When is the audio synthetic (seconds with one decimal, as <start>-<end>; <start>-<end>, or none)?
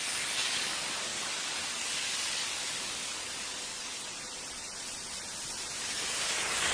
0.0-4.1; 5.8-6.7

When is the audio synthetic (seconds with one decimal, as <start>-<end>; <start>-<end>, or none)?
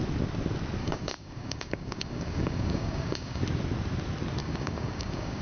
0.8-3.4; 4.4-5.4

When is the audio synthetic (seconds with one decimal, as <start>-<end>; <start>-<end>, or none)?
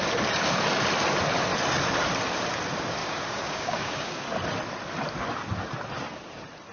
3.0-4.3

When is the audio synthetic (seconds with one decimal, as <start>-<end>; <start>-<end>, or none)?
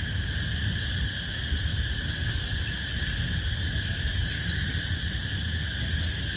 none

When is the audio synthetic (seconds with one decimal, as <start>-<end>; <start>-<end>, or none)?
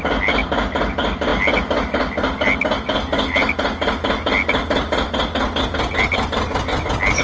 none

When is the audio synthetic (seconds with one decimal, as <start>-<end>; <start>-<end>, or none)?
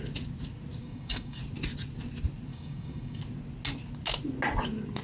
0.8-1.4; 2.5-3.2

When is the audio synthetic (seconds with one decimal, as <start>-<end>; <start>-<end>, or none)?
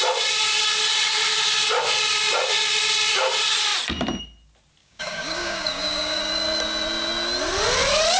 4.8-6.2